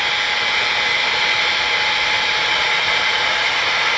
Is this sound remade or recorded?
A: recorded